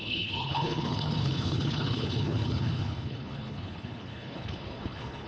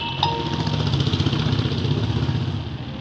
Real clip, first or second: second